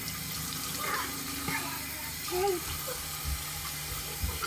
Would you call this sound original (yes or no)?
yes